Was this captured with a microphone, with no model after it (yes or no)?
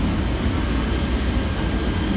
yes